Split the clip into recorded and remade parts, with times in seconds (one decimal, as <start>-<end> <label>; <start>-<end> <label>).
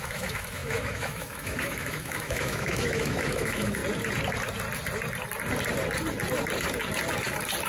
0.0-3.8 remade; 3.8-7.7 recorded